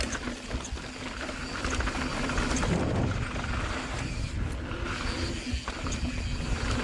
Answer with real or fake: real